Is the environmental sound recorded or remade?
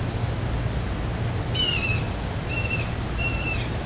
recorded